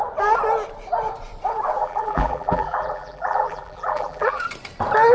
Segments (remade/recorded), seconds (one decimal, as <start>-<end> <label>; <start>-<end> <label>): 0.0-1.8 recorded; 1.8-4.4 remade; 4.4-5.1 recorded